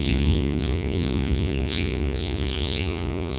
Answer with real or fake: fake